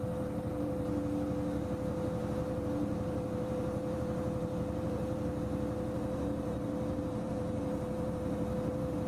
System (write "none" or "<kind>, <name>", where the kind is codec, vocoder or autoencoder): vocoder, BigVGAN v2